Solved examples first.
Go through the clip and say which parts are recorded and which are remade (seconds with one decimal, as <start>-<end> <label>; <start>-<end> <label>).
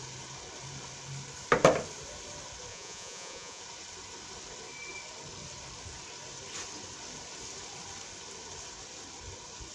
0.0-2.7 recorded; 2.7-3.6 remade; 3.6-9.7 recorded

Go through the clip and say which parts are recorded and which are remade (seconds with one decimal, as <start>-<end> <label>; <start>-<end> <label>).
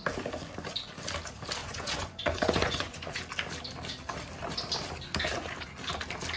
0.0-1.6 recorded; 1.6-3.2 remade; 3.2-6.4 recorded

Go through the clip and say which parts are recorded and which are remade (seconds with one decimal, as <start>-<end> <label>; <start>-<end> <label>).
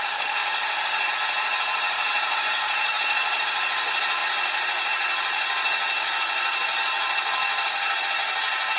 0.0-2.1 recorded; 2.1-3.4 remade; 3.4-8.8 recorded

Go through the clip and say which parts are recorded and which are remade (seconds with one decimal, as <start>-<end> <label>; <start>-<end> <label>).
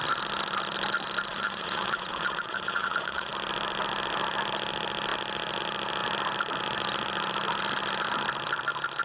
0.0-1.3 recorded; 1.3-3.3 remade; 3.3-9.0 recorded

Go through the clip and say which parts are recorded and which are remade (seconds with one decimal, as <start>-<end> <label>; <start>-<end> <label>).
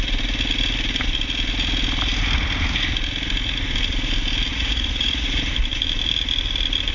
0.0-4.5 recorded; 4.5-5.4 remade; 5.4-6.9 recorded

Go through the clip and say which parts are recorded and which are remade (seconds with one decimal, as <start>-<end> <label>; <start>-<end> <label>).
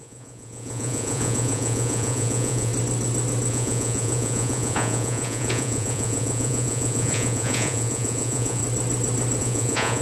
0.0-2.7 remade; 2.7-3.5 recorded; 3.5-8.6 remade; 8.6-9.4 recorded; 9.4-10.0 remade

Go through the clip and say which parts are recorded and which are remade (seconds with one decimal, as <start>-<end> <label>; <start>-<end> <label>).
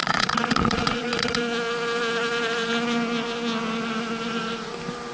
0.0-1.4 remade; 1.4-5.1 recorded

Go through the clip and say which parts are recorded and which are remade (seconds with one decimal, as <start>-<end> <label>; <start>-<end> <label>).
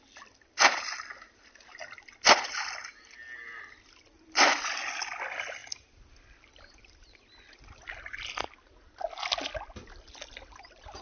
0.0-11.0 recorded